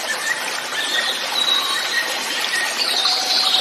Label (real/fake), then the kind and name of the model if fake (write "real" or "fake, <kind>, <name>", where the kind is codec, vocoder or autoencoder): real